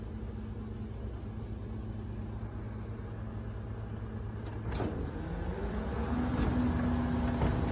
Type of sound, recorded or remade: recorded